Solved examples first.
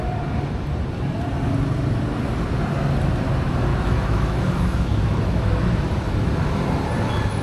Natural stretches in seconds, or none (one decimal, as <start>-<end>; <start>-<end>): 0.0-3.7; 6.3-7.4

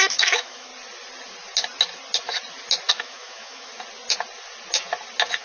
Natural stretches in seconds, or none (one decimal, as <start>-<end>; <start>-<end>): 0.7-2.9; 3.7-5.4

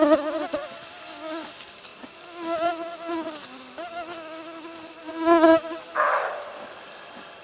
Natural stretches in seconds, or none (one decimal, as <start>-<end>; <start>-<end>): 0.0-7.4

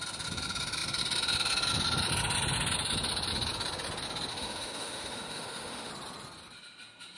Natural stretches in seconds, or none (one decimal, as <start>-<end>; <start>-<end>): 0.0-4.3; 5.9-7.2

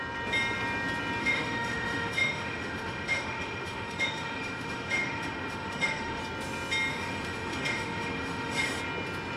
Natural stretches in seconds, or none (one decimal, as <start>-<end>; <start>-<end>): 0.0-1.2; 6.2-6.9; 8.8-9.4

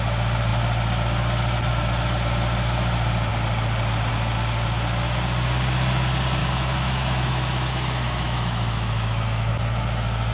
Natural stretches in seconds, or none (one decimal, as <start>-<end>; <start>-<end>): 0.0-6.4; 9.5-10.3

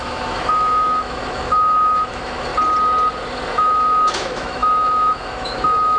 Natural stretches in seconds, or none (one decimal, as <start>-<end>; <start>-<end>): 2.5-3.5

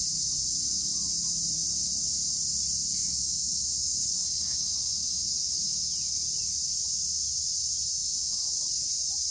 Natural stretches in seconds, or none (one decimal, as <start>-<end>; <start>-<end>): 0.0-2.8; 5.7-8.0; 8.5-9.3